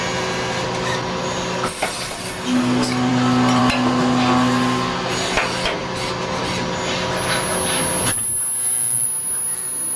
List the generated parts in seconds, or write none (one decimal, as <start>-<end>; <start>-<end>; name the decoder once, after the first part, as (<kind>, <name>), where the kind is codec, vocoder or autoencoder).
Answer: none